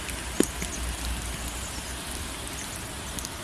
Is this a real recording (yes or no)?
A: yes